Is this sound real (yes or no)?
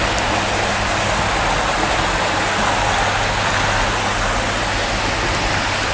yes